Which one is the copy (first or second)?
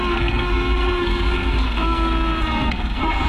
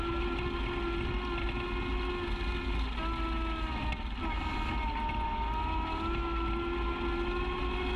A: first